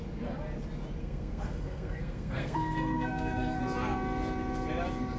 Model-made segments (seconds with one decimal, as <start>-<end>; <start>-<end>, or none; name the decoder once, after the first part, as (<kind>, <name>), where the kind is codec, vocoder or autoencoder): 1.0-3.6 (codec, SNAC)